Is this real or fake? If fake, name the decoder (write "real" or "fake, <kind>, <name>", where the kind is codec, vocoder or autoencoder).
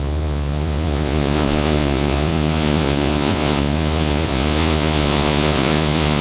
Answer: fake, vocoder, Vocos